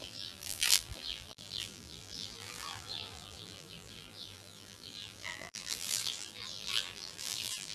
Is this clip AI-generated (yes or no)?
yes